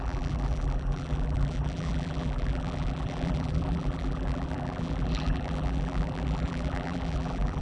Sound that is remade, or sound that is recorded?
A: remade